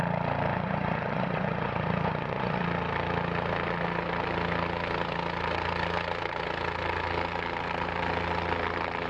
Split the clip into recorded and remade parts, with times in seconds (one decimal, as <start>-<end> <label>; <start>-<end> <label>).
0.0-0.5 recorded; 0.5-2.6 remade; 2.6-9.1 recorded